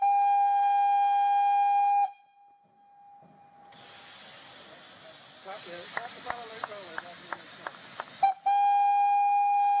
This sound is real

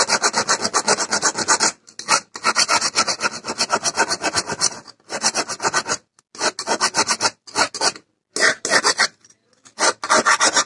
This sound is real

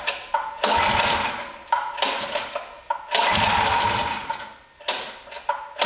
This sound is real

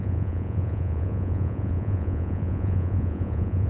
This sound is fake